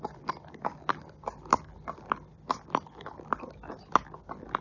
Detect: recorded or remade recorded